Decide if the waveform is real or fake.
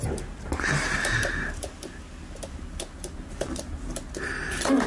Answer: real